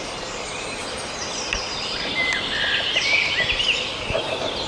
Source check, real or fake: real